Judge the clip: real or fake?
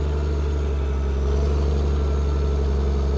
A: real